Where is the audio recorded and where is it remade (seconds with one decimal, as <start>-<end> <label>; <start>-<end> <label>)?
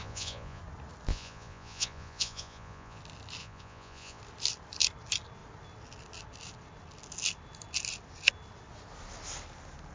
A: 0.0-0.6 remade; 0.6-1.1 recorded; 1.1-3.0 remade; 3.0-3.4 recorded; 3.4-4.2 remade; 4.2-9.9 recorded